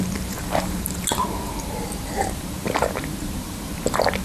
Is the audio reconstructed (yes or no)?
yes